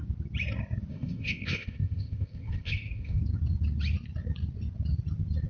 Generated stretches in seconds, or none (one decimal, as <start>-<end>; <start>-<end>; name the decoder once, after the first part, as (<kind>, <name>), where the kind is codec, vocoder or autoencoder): 0.9-3.2 (codec, ZipCodec)